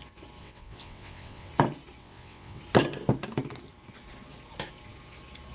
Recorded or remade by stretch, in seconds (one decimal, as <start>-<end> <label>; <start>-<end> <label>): 0.0-0.4 recorded; 0.4-1.5 remade; 1.5-2.0 recorded; 2.0-2.6 remade; 2.6-5.5 recorded